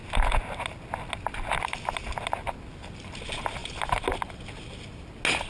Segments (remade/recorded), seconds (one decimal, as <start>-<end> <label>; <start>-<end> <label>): 0.0-5.5 recorded